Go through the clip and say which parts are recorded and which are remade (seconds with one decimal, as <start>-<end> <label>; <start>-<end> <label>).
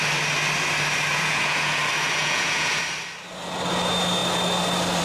0.0-1.1 recorded; 1.1-1.8 remade; 1.8-2.2 recorded; 2.2-2.8 remade; 2.8-5.0 recorded